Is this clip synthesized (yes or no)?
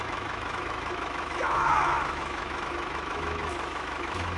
yes